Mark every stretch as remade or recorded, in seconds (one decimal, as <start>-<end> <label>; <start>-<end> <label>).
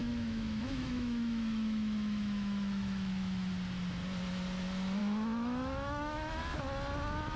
0.0-3.5 remade; 3.5-5.0 recorded; 5.0-6.4 remade; 6.4-7.4 recorded